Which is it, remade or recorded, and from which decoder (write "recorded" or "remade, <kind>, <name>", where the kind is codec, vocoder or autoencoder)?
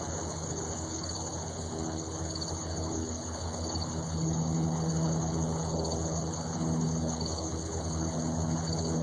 remade, codec, HILCodec